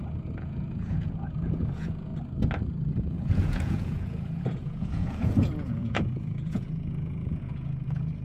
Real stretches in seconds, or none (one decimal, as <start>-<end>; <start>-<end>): 2.1-2.7